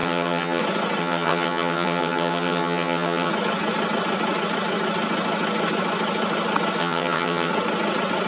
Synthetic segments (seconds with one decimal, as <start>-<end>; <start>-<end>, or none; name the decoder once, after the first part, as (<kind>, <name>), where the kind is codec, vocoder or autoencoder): 0.0-0.6 (vocoder, HiFi-GAN); 1.0-3.3; 6.8-7.5